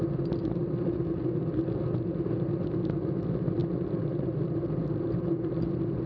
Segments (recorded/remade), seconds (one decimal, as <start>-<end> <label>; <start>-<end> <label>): 0.0-0.6 recorded; 0.6-1.2 remade; 1.2-3.6 recorded; 3.6-6.1 remade